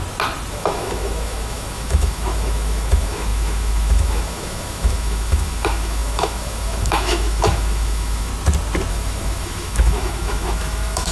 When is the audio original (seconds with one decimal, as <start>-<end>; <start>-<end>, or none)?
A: 0.0-0.5; 8.3-8.9